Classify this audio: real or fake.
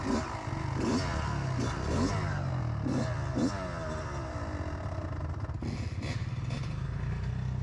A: real